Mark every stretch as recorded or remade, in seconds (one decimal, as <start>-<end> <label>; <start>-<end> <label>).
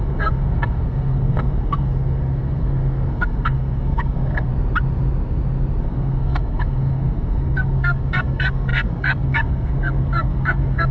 0.0-4.5 remade; 4.5-5.8 recorded; 5.8-10.9 remade